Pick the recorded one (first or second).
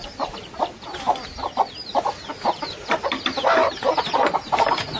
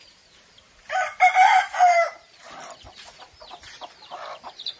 first